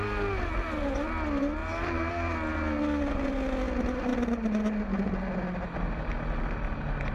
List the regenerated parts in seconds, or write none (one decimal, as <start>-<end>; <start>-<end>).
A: 1.6-2.1